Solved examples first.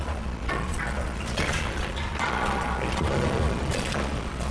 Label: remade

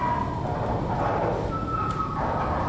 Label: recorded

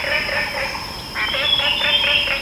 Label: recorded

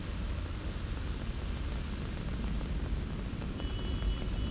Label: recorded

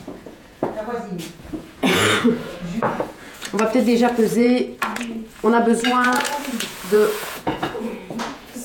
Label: remade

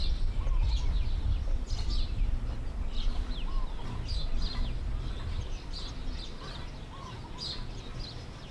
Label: recorded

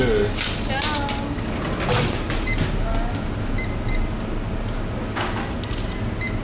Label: recorded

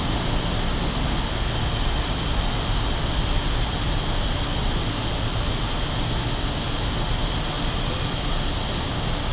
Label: recorded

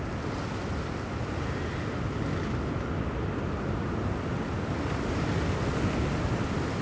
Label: recorded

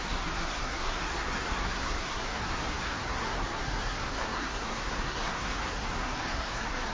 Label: remade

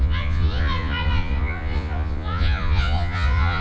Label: remade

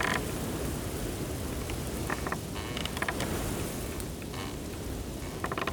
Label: recorded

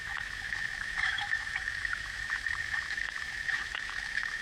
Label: remade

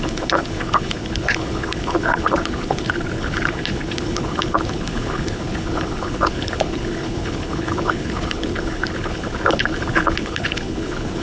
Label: remade